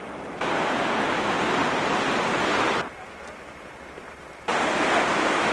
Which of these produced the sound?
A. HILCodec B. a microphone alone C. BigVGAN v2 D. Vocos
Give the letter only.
B